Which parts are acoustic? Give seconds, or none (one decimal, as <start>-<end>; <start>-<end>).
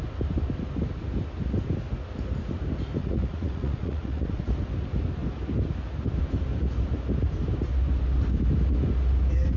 0.0-3.0; 4.5-9.6